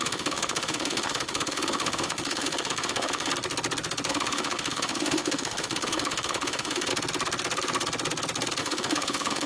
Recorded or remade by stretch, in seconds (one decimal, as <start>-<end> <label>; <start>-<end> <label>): 0.0-3.3 remade; 3.3-4.1 recorded; 4.1-6.9 remade; 6.9-8.6 recorded; 8.6-9.5 remade